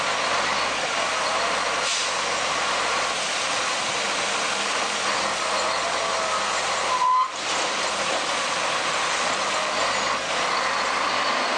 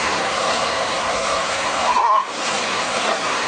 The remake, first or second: second